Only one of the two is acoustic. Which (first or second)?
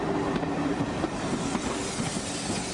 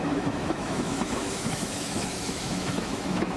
first